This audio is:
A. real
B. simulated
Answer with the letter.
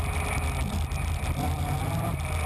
A